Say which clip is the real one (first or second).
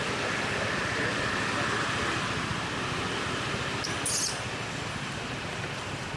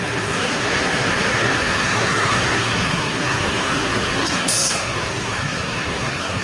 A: first